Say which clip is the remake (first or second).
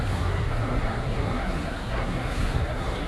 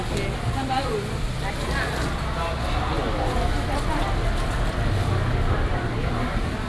first